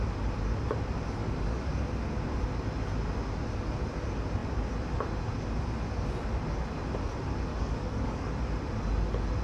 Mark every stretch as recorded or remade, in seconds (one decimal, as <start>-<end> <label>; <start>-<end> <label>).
0.0-1.2 recorded; 1.2-1.7 remade; 1.7-7.5 recorded; 7.5-8.3 remade; 8.3-9.4 recorded